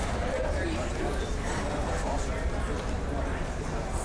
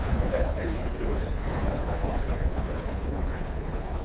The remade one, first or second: second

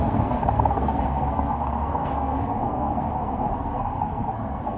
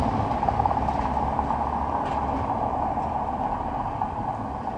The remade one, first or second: first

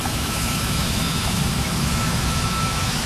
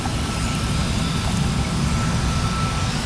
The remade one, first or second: first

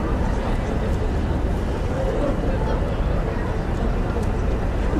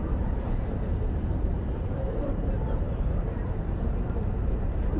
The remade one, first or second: second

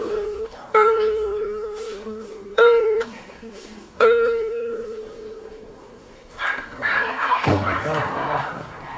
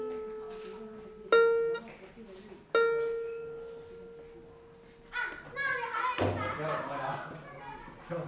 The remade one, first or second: first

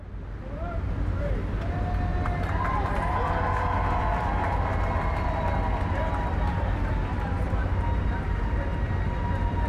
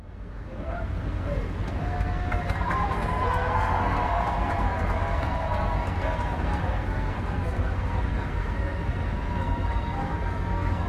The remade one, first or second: second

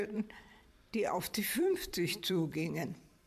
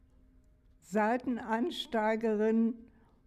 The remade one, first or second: first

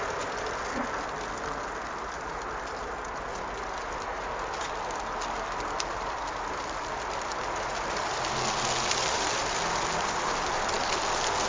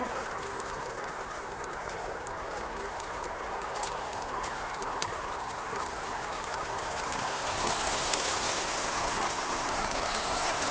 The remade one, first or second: second